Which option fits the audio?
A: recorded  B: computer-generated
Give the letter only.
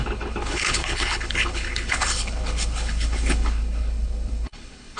B